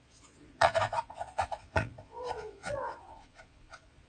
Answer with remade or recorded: remade